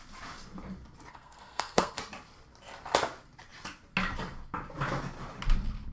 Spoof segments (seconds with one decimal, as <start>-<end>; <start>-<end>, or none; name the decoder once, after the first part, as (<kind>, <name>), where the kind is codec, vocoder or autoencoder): 1.1-2.0 (codec, SNAC)